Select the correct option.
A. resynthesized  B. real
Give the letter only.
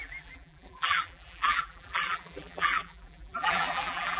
A